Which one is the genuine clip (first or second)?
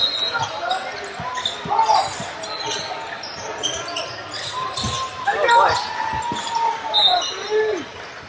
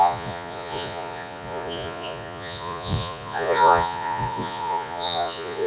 first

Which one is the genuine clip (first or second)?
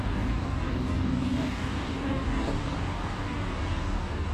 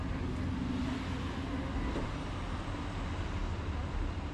second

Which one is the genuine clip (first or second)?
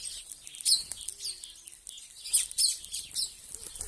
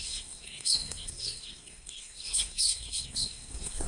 first